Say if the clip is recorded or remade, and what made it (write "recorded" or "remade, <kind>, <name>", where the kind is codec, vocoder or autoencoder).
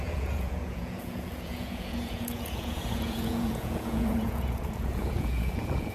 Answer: remade, vocoder, Vocos